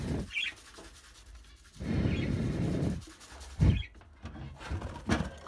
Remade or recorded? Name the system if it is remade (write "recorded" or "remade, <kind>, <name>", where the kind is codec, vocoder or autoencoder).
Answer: recorded